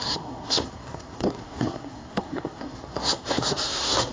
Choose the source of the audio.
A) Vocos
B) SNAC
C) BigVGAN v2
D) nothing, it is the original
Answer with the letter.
B